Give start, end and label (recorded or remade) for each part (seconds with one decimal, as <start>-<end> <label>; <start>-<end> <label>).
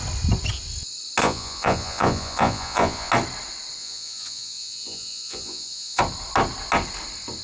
0.0-1.2 recorded; 1.2-3.1 remade; 3.1-3.8 recorded; 3.8-6.0 remade; 6.0-7.4 recorded